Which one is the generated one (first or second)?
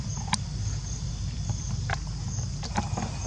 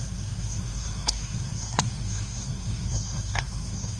second